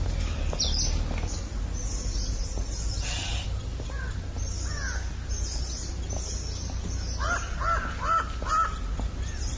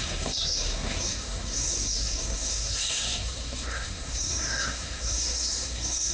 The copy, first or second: second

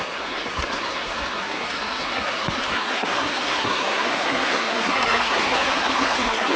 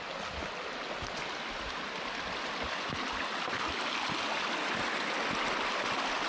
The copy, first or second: first